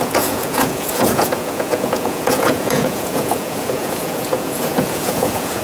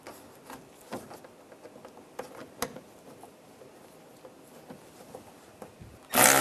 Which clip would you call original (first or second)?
second